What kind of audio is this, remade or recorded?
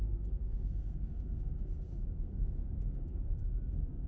remade